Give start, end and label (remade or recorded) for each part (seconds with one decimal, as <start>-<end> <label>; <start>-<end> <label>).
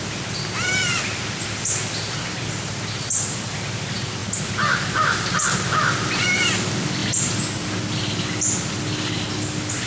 0.0-9.9 recorded